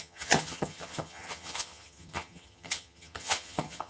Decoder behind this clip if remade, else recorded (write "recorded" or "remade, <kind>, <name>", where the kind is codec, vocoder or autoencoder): remade, vocoder, HiFi-GAN